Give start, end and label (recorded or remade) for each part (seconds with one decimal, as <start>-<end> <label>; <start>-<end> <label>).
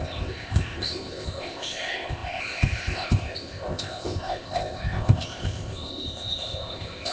0.0-7.1 remade